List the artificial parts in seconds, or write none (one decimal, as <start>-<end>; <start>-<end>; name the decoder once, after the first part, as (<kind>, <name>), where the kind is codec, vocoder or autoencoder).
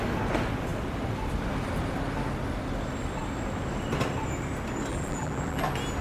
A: 4.9-5.6 (vocoder, BigVGAN v2)